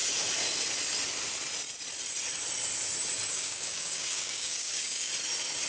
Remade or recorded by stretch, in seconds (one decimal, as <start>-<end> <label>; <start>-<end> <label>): 0.0-3.3 recorded; 3.3-5.1 remade; 5.1-5.7 recorded